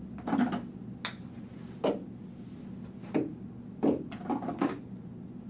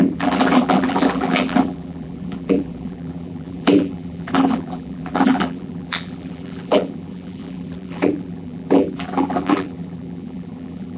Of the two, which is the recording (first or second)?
first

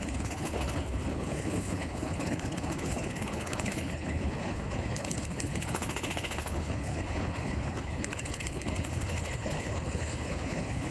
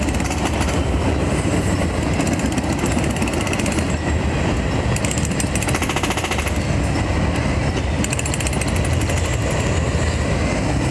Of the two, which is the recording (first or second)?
second